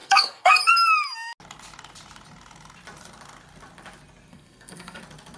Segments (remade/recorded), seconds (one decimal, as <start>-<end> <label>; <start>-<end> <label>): 0.0-0.7 remade; 0.7-4.3 recorded; 4.3-5.0 remade; 5.0-5.4 recorded